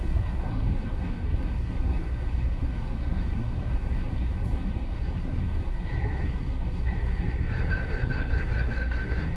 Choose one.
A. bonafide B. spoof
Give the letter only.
B